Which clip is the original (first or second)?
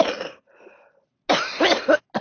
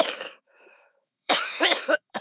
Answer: first